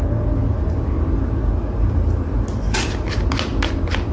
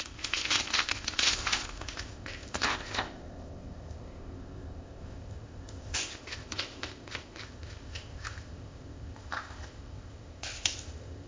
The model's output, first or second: second